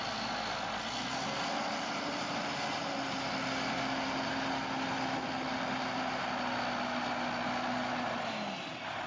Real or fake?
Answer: real